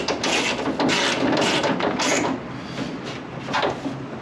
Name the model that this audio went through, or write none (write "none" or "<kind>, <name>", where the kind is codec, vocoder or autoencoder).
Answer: none